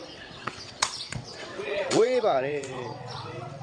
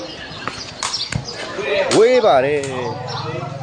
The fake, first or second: first